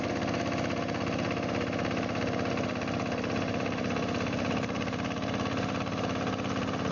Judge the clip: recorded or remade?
recorded